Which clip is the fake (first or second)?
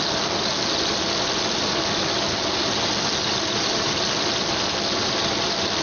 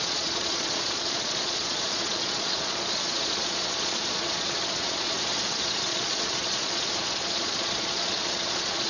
second